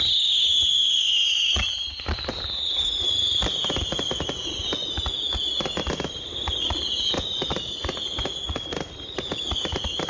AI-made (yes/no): no